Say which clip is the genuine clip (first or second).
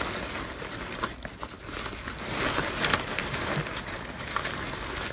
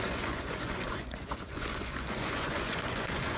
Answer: first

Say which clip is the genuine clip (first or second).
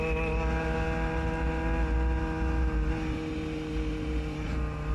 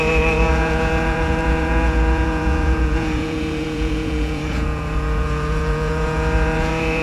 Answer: first